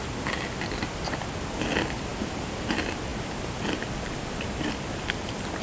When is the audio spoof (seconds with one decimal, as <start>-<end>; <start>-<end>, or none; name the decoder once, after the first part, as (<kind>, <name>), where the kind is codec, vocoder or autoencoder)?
none